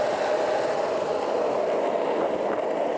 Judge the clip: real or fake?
real